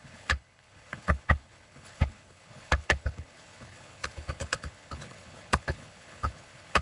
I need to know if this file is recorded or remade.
remade